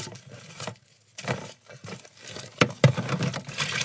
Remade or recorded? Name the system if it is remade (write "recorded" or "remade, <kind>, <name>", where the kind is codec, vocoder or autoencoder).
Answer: recorded